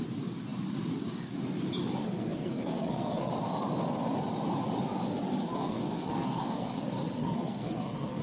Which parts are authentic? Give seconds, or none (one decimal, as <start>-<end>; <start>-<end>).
0.0-2.0; 3.3-5.4; 6.8-7.2